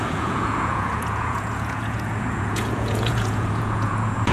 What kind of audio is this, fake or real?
fake